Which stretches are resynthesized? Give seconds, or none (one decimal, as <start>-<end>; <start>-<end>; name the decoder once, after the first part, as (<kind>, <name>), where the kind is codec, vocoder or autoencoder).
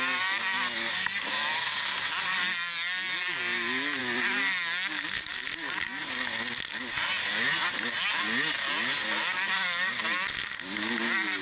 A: none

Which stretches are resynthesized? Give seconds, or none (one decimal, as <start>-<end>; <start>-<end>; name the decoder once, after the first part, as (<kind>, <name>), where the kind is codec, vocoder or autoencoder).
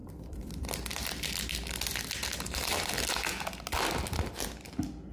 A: none